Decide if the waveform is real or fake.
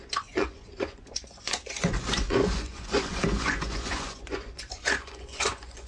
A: fake